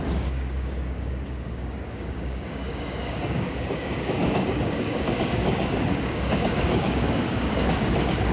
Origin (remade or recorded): remade